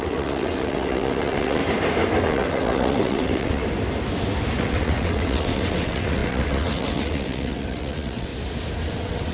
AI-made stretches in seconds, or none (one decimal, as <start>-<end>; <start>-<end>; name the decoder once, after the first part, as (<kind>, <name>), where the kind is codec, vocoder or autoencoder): 0.0-1.6 (vocoder, WaveNeXt); 2.2-3.6; 4.6-8.3; 8.9-9.3